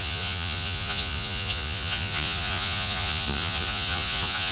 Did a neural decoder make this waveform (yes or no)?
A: yes